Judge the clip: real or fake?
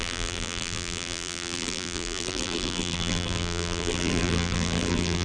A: fake